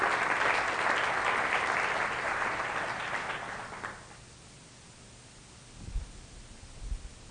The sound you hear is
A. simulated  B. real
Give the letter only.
B